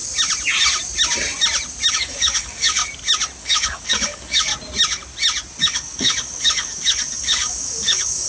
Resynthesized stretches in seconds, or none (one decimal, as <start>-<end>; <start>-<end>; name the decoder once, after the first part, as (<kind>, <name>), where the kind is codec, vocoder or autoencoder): 1.9-2.8 (codec, DAC); 3.4-4.5; 5.6-8.3